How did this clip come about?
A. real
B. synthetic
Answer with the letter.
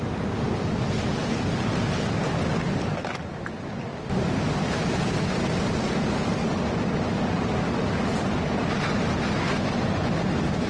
A